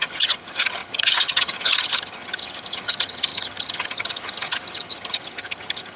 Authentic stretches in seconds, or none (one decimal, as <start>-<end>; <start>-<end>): none